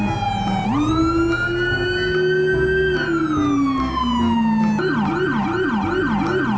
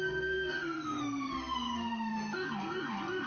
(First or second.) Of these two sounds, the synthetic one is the second